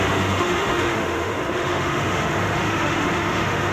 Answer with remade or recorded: remade